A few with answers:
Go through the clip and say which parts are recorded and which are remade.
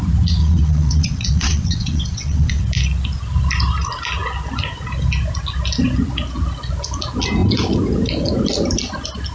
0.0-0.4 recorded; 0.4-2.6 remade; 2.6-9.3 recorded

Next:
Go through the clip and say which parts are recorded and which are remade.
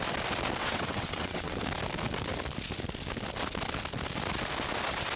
0.0-0.6 recorded; 0.6-1.6 remade; 1.6-5.2 recorded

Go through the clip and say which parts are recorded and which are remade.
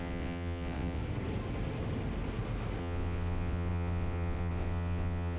0.0-1.0 remade; 1.0-2.8 recorded; 2.8-5.4 remade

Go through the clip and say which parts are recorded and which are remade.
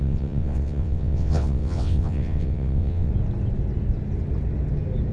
0.0-3.1 remade; 3.1-5.1 recorded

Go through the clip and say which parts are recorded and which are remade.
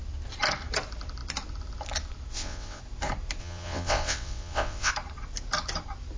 0.0-2.3 recorded; 2.3-2.8 remade; 2.8-3.4 recorded; 3.4-4.9 remade; 4.9-6.2 recorded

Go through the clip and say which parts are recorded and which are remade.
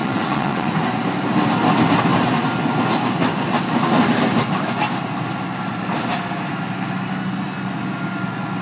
0.0-0.7 remade; 0.7-8.6 recorded